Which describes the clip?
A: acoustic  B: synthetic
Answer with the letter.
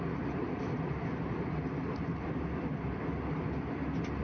A